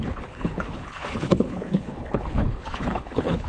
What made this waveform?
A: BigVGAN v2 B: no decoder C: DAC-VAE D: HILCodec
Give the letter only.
D